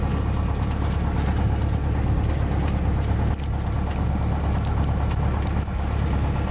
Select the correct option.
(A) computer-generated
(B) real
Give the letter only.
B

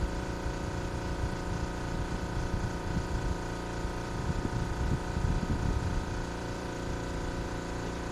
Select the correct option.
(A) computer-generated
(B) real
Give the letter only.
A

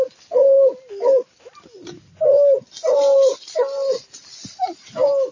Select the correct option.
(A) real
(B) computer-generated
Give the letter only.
A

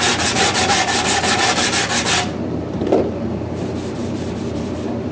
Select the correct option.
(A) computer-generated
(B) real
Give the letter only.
A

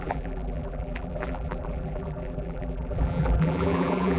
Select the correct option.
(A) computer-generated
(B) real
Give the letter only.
A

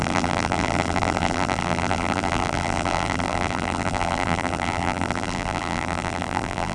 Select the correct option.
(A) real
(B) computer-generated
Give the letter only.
B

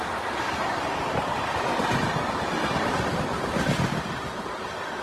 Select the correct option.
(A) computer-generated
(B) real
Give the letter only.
B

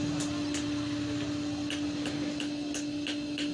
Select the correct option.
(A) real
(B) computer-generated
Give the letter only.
A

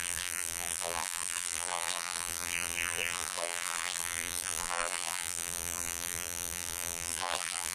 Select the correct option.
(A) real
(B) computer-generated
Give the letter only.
B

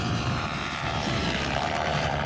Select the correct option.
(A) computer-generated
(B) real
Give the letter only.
A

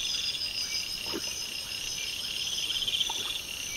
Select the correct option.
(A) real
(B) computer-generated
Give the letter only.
A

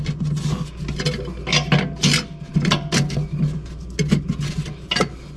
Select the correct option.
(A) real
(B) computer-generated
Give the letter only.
A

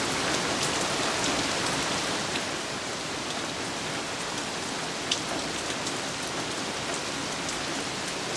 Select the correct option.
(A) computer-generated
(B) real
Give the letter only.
B